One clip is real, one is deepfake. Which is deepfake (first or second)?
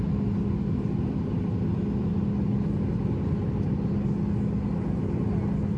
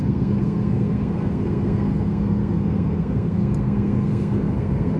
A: second